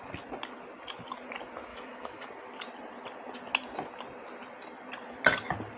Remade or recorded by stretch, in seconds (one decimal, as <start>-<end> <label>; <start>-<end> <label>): 0.0-1.7 recorded; 1.7-2.3 remade; 2.3-5.8 recorded